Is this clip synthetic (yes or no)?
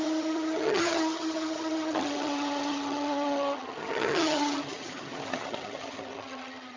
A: yes